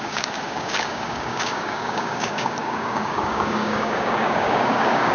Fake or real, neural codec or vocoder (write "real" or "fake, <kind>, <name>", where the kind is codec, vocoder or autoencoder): fake, codec, DAC